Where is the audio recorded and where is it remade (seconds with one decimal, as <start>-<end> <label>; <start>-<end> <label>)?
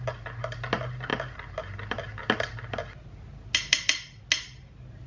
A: 0.0-5.1 recorded